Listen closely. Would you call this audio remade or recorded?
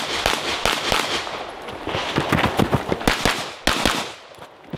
recorded